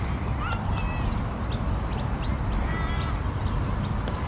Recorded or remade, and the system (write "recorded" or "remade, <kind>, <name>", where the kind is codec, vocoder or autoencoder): recorded